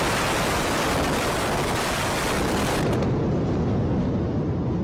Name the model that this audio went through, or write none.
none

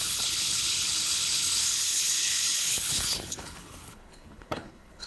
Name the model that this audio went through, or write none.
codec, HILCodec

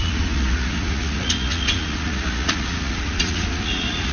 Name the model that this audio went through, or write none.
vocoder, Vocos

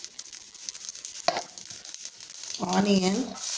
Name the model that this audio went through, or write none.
none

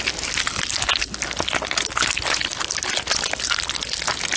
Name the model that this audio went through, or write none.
none